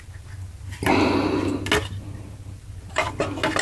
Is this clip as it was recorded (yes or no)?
yes